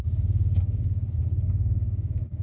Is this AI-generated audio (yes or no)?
yes